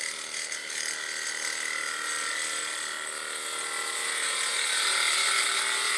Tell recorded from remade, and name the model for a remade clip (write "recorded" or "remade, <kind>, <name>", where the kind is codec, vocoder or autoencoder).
recorded